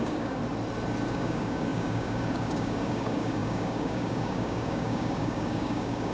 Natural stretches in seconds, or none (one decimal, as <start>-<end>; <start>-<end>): 0.4-1.1